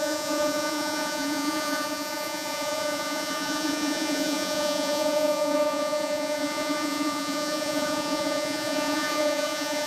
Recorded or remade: remade